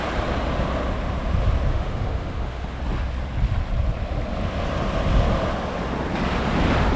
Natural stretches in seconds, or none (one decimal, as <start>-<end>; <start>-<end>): 0.0-1.7; 2.8-7.0